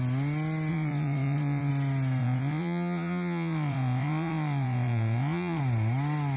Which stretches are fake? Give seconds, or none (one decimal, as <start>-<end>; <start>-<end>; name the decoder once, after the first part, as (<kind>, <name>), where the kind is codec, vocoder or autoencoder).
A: 0.7-1.7 (vocoder, Vocos); 2.2-5.6